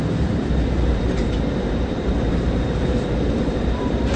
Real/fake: fake